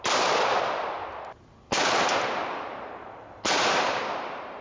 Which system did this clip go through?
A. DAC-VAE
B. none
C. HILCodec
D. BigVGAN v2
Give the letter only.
B